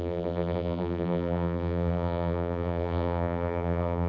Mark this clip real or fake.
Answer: fake